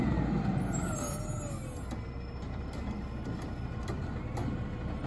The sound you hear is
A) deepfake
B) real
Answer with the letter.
B